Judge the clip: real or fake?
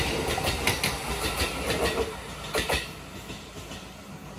real